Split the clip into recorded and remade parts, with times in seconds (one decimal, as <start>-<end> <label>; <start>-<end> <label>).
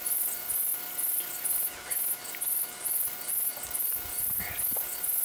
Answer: 0.0-5.2 recorded